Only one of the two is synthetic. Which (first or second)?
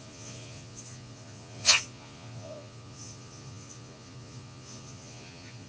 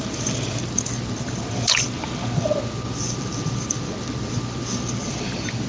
first